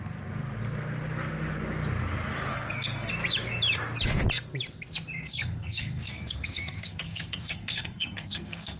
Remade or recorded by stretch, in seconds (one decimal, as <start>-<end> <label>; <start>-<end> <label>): 0.0-2.5 recorded; 2.5-3.1 remade; 3.1-5.3 recorded; 5.3-8.8 remade

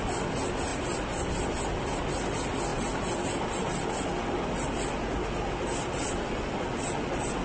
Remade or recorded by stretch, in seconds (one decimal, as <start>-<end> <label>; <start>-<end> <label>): 0.0-7.4 recorded

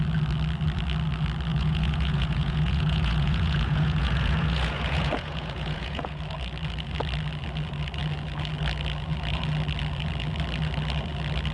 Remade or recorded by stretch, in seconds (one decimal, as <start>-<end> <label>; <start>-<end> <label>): 0.0-1.5 recorded; 1.5-6.2 remade; 6.2-11.5 recorded

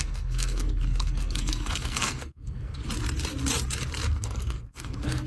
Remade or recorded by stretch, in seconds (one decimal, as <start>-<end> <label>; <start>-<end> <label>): 0.0-2.8 remade; 2.8-4.1 recorded; 4.1-5.3 remade

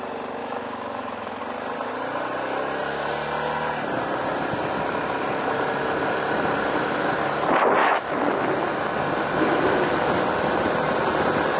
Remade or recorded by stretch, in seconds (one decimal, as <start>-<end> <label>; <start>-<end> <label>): 0.0-0.4 recorded; 0.4-1.4 remade; 1.4-7.8 recorded; 7.8-8.4 remade; 8.4-11.6 recorded

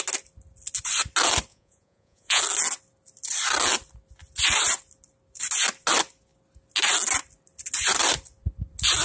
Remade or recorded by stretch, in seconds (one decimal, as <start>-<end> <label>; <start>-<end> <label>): 0.0-1.5 recorded; 1.5-2.4 remade; 2.4-9.0 recorded